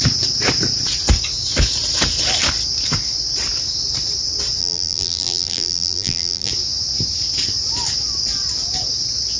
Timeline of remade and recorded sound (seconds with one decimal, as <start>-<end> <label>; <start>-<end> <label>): 0.0-4.6 recorded; 4.6-6.5 remade; 6.5-9.4 recorded